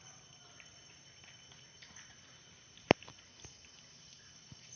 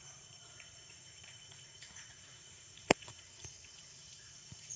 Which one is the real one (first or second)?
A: first